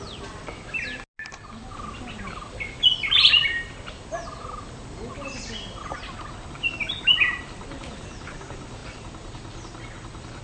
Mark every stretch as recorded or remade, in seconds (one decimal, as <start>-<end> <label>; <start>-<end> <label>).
0.0-10.4 recorded